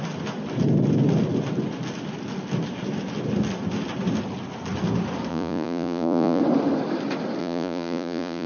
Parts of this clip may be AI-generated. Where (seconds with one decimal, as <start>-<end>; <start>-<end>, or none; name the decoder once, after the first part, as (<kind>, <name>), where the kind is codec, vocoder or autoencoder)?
5.3-6.4 (vocoder, Vocos); 7.4-8.5